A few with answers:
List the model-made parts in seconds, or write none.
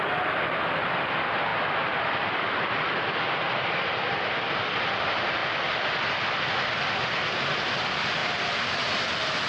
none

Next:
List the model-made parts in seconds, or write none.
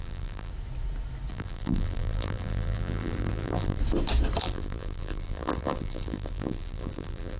0.0-0.5 (vocoder, BigVGAN v2); 1.3-3.8; 4.4-7.4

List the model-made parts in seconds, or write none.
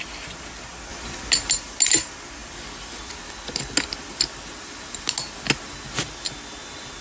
none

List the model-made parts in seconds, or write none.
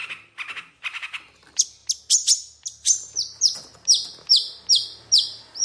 0.7-1.8 (vocoder, BigVGAN v2); 3.4-5.6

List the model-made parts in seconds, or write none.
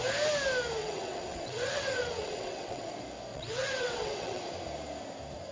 0.8-2.9 (vocoder, WaveNeXt); 3.3-4.4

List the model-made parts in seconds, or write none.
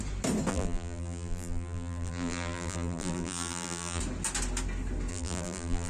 0.5-4.0 (vocoder, BigVGAN v2); 5.1-5.9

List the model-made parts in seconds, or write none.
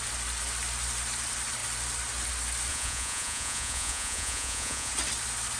2.7-4.9 (vocoder, Vocos)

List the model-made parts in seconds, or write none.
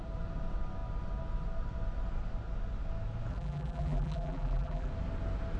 3.3-4.9 (vocoder, BigVGAN v2)